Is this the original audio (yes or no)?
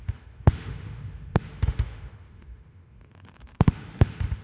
no